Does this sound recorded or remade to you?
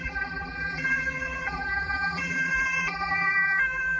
remade